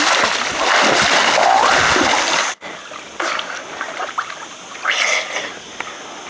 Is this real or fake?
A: real